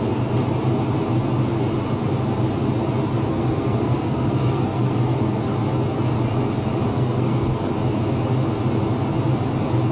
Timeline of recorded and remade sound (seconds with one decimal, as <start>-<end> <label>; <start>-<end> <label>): 0.0-3.3 recorded; 3.3-5.4 remade; 5.4-6.9 recorded; 6.9-7.7 remade; 7.7-9.9 recorded